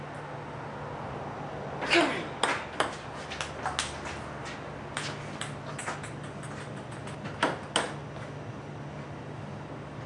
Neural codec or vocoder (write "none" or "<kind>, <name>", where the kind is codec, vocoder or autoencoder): none